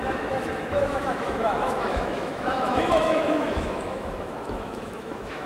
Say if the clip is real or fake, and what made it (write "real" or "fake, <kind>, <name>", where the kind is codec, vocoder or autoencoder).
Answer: fake, autoencoder, DAC-VAE